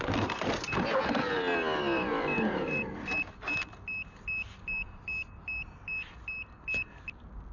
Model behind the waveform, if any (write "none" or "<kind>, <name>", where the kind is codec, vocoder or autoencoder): none